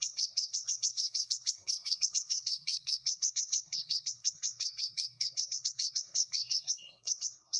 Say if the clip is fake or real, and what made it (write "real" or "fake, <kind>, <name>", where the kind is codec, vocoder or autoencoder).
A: fake, codec, SNAC